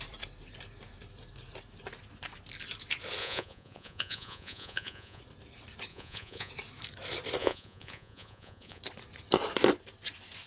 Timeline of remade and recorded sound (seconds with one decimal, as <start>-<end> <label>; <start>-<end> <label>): 0.0-3.2 recorded; 3.2-5.2 remade; 5.2-5.9 recorded; 5.9-6.5 remade; 6.5-7.4 recorded; 7.4-8.8 remade; 8.8-10.5 recorded